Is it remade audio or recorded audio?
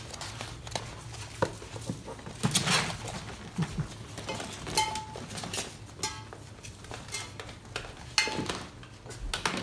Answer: recorded